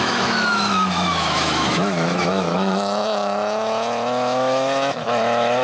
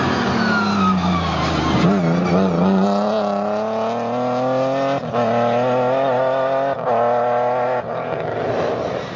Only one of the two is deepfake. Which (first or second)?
first